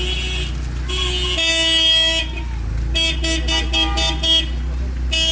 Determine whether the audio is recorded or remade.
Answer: recorded